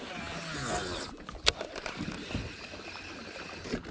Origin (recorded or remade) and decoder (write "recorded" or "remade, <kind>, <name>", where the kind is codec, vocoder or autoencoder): recorded